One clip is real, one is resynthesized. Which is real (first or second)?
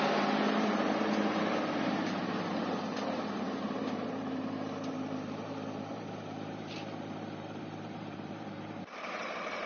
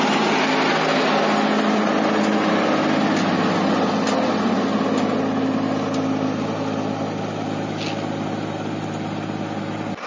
second